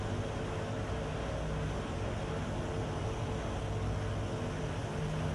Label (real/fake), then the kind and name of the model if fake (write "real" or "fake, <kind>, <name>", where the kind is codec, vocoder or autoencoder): real